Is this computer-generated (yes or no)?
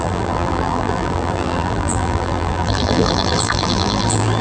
yes